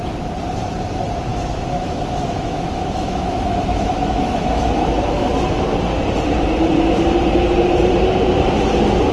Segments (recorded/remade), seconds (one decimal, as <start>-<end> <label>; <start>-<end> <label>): 0.0-1.3 recorded; 1.3-5.3 remade; 5.3-9.1 recorded